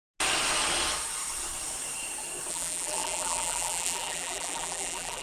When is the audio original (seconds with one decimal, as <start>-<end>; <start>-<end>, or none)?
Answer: 0.0-2.5